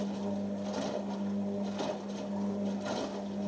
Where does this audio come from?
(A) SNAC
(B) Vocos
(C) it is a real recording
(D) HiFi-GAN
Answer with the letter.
C